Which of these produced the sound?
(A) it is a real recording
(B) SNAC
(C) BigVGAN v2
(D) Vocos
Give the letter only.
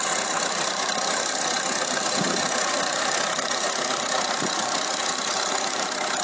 D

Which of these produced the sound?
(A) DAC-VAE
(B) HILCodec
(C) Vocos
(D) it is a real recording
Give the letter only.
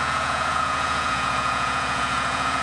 C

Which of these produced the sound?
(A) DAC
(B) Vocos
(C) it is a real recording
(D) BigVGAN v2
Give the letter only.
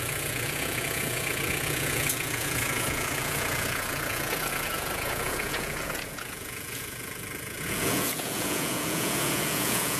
B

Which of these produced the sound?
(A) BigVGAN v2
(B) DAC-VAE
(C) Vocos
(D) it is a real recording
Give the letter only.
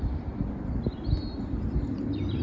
D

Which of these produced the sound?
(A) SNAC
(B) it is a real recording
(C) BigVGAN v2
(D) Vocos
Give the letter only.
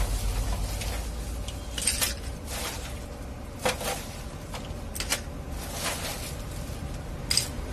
B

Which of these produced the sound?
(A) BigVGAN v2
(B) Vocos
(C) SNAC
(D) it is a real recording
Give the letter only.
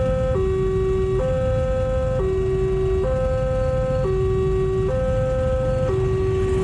D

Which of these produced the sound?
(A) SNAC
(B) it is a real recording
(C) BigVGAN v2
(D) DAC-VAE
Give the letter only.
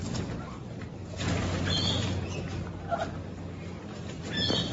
B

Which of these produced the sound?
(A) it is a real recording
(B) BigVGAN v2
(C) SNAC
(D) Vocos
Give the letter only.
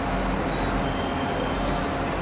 A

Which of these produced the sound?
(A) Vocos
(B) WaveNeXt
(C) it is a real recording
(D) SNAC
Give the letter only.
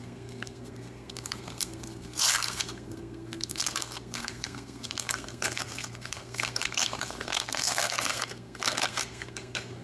D